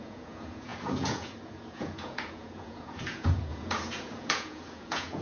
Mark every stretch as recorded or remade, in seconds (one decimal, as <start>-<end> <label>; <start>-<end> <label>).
0.0-5.2 remade